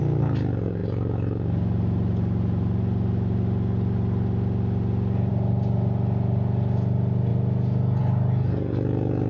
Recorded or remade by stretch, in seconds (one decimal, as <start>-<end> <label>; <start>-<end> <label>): 0.0-9.3 recorded